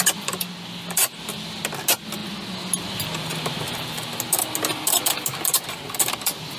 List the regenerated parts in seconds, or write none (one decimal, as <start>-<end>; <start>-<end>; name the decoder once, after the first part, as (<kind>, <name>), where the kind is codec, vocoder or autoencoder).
none